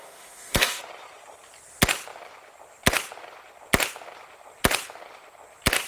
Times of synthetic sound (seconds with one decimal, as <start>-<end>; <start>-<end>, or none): 0.0-0.8